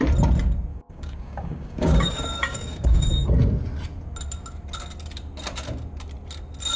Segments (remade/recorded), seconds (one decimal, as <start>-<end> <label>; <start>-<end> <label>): 0.0-0.7 recorded; 0.7-3.3 remade; 3.3-6.8 recorded